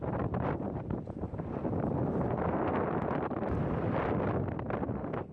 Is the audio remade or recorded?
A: remade